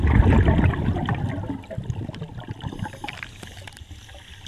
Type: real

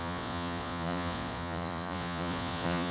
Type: fake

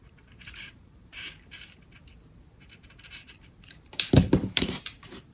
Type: fake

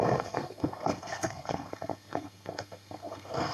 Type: fake